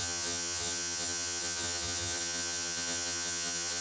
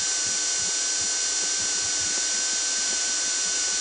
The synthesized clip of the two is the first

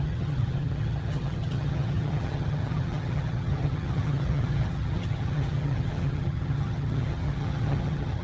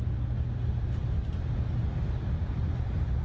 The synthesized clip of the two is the first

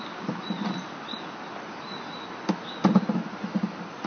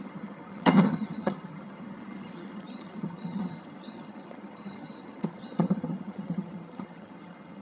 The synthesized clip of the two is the second